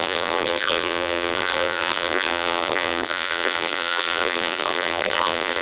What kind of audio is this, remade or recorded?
remade